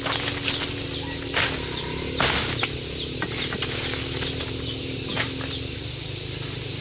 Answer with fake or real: real